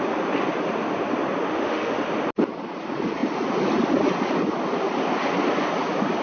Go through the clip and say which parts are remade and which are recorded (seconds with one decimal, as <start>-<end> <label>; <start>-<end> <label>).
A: 0.0-1.5 recorded; 1.5-2.0 remade; 2.0-6.2 recorded